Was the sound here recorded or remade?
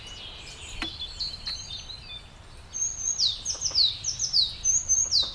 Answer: recorded